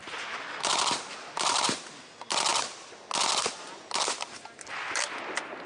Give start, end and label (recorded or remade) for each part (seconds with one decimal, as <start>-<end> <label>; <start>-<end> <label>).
0.0-5.7 recorded